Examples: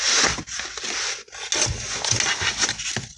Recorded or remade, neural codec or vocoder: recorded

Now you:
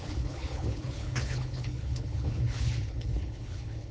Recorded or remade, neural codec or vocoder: remade, codec, HILCodec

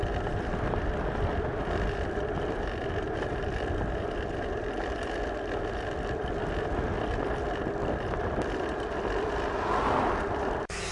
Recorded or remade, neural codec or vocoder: recorded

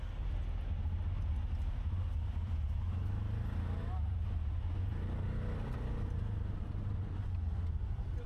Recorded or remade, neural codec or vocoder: recorded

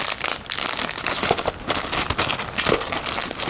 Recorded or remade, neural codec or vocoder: recorded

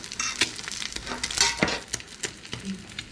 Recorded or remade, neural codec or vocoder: recorded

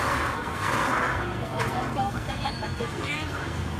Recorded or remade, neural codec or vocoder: remade, codec, SNAC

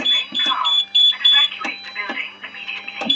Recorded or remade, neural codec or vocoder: remade, vocoder, BigVGAN v2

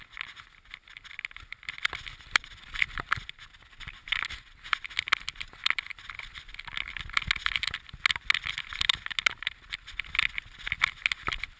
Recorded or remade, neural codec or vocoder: recorded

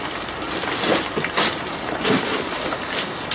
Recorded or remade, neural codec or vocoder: recorded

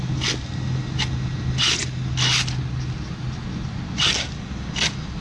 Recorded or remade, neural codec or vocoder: recorded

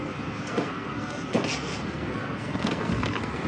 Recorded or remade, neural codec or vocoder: remade, codec, SNAC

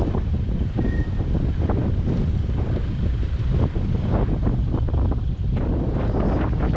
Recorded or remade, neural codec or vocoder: recorded